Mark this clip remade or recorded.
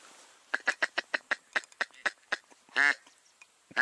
remade